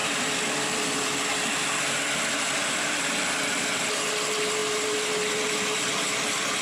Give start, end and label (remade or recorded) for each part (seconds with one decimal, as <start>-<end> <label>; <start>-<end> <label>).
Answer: 0.0-0.8 remade; 0.8-2.6 recorded; 2.6-4.1 remade; 4.1-6.6 recorded